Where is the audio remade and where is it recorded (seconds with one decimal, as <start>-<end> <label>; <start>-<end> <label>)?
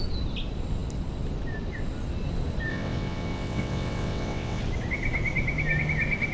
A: 0.0-2.7 recorded; 2.7-4.6 remade; 4.6-6.3 recorded